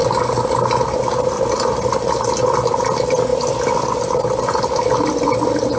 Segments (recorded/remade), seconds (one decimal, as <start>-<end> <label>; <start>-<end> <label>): 0.0-5.8 recorded